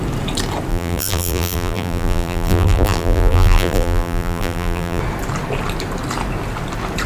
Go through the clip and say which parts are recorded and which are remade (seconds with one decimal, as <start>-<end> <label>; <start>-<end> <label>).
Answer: 0.0-0.7 recorded; 0.7-5.0 remade; 5.0-7.1 recorded